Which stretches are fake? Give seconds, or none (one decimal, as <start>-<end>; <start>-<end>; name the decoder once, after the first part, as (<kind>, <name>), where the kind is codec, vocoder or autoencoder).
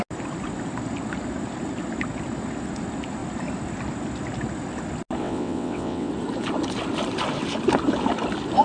5.2-6.1 (vocoder, WaveNeXt)